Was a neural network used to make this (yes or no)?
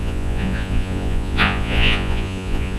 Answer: yes